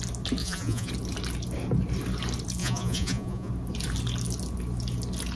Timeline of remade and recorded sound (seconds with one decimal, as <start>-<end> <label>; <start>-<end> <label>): 0.0-0.4 recorded; 0.4-0.9 remade; 0.9-2.6 recorded; 2.6-3.5 remade; 3.5-5.4 recorded